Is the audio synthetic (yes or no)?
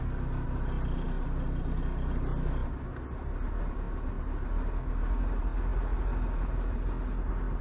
no